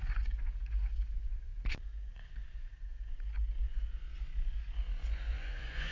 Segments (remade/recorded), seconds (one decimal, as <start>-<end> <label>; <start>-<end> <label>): 0.0-5.9 remade